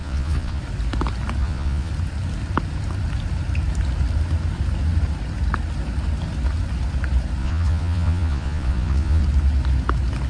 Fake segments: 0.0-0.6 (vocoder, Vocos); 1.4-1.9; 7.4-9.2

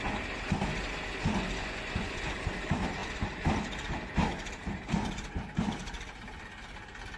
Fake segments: 1.6-2.2 (vocoder, Vocos)

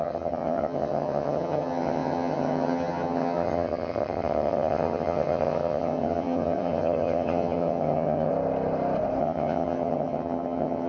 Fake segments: 0.0-8.3 (vocoder, HiFi-GAN); 9.2-10.9

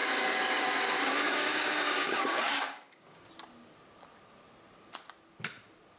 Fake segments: 0.0-3.3 (codec, DAC)

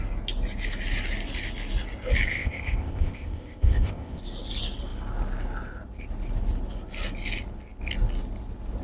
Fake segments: 2.3-4.2 (codec, ZipCodec)